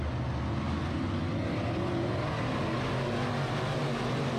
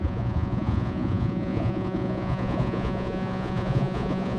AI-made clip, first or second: second